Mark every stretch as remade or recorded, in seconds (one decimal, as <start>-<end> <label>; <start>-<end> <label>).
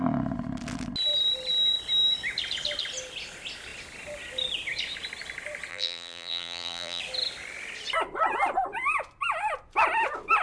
0.0-5.7 recorded; 5.7-7.0 remade; 7.0-10.4 recorded